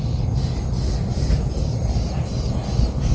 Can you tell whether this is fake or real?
real